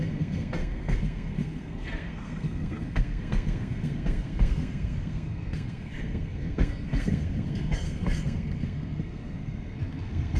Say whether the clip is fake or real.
fake